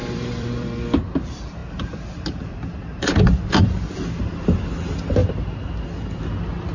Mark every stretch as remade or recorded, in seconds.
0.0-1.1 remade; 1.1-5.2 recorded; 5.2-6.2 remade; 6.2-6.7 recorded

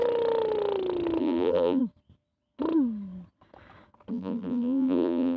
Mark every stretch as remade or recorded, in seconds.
0.0-1.2 recorded; 1.2-1.8 remade; 1.8-4.1 recorded; 4.1-5.4 remade

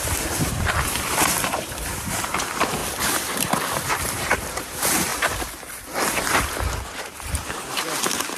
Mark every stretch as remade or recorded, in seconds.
0.0-2.8 remade; 2.8-3.9 recorded; 3.9-5.1 remade; 5.1-7.0 recorded; 7.0-8.4 remade

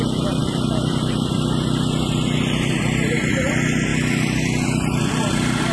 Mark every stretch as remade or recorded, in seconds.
0.0-3.9 remade; 3.9-5.0 recorded; 5.0-5.7 remade

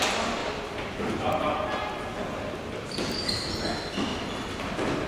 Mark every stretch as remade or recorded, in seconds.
0.0-0.4 recorded; 0.4-3.5 remade; 3.5-4.1 recorded; 4.1-5.1 remade

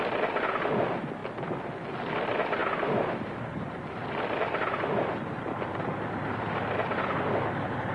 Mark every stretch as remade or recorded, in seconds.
0.0-1.2 recorded; 1.2-1.8 remade; 1.8-2.6 recorded; 2.6-6.9 remade; 6.9-7.9 recorded

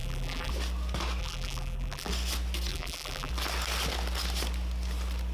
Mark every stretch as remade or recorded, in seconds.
0.0-0.5 remade; 0.5-1.2 recorded; 1.2-2.1 remade; 2.1-2.7 recorded; 2.7-3.3 remade; 3.3-5.3 recorded

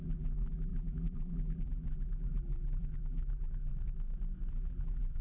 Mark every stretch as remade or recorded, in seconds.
0.0-3.7 remade; 3.7-4.5 recorded; 4.5-5.2 remade